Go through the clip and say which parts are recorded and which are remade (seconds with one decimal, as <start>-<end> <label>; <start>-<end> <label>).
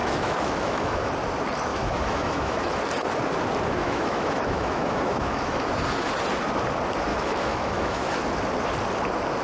0.0-1.1 remade; 1.1-1.7 recorded; 1.7-2.8 remade; 2.8-3.8 recorded; 3.8-5.7 remade; 5.7-7.1 recorded; 7.1-8.1 remade; 8.1-9.4 recorded